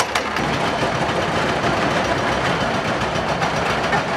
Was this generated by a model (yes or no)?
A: no